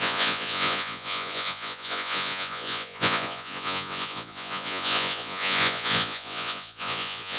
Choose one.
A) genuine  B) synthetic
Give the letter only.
B